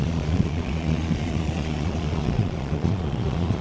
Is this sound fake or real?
fake